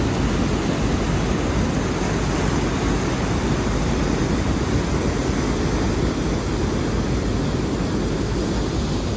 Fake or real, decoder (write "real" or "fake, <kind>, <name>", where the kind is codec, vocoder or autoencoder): real